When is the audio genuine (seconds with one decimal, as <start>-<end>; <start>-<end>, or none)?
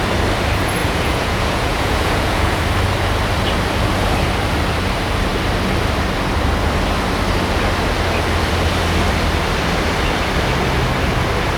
0.0-0.8; 2.6-11.6